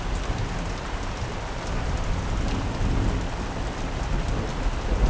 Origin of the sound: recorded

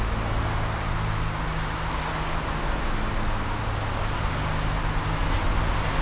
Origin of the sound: recorded